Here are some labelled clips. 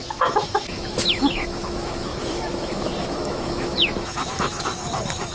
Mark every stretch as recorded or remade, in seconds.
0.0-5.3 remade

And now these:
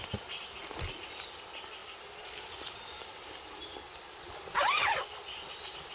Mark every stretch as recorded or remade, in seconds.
0.0-5.9 recorded